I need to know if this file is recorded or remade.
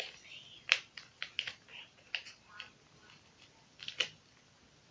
recorded